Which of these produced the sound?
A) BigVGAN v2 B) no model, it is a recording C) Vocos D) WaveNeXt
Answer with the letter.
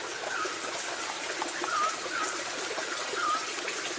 B